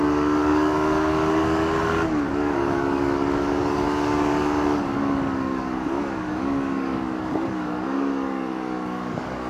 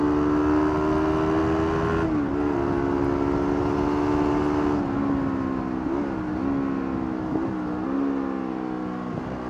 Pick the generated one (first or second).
first